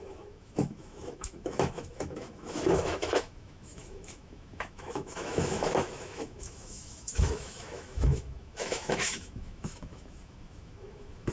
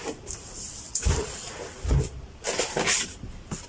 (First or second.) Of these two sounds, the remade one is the first